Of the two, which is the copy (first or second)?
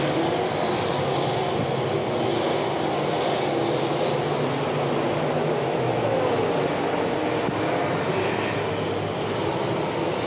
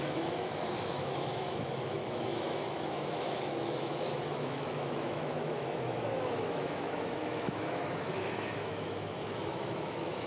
second